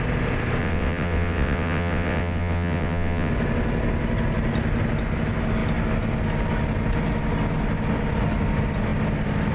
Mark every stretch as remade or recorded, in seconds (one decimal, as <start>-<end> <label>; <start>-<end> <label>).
0.0-0.6 recorded; 0.6-3.3 remade; 3.3-9.5 recorded